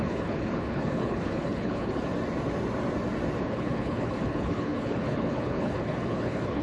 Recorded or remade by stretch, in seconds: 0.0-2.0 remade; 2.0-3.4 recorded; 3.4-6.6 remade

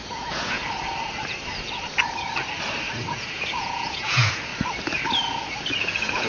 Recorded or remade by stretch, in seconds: 0.0-0.6 remade; 0.6-3.1 recorded; 3.1-4.5 remade; 4.5-5.8 recorded; 5.8-6.3 remade

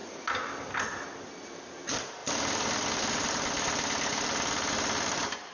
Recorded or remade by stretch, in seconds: 0.0-5.5 recorded

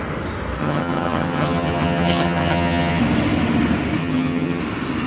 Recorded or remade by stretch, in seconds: 0.0-0.6 recorded; 0.6-3.0 remade; 3.0-4.0 recorded; 4.0-4.6 remade; 4.6-5.1 recorded

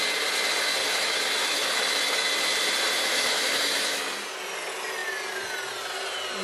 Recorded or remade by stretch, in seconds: 0.0-0.8 recorded; 0.8-1.8 remade; 1.8-3.1 recorded; 3.1-4.0 remade; 4.0-6.4 recorded

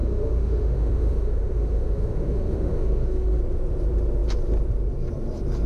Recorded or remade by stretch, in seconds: 0.0-3.4 remade; 3.4-5.7 recorded